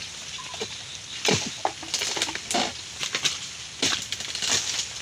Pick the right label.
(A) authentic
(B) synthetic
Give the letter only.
A